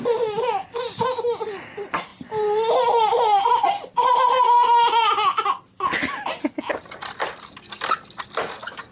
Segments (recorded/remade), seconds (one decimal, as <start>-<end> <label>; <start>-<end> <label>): 0.0-8.9 recorded